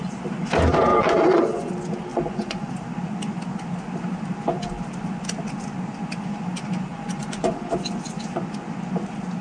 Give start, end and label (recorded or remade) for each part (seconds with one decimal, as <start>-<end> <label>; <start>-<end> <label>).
0.0-0.9 recorded; 0.9-1.7 remade; 1.7-2.1 recorded; 2.1-2.7 remade; 2.7-6.9 recorded; 6.9-7.6 remade; 7.6-9.4 recorded